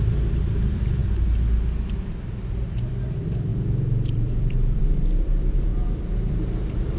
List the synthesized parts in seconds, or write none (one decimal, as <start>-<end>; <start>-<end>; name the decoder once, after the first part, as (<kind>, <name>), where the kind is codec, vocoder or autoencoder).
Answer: 0.0-1.0 (vocoder, BigVGAN v2); 1.9-7.0